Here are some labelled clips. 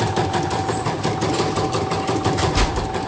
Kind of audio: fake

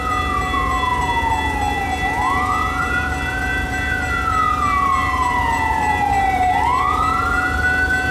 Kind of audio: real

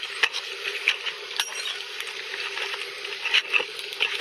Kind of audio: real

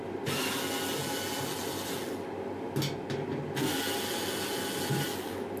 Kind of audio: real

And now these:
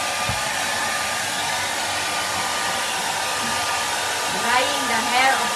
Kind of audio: real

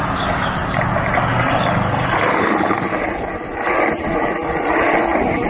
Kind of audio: real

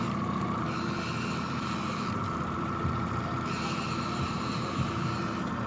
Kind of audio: fake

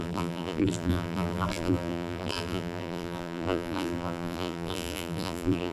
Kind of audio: fake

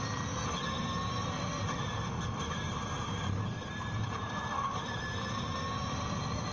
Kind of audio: fake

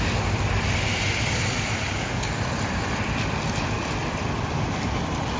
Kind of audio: fake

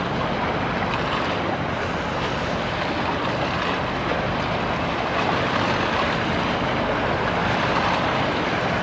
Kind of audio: fake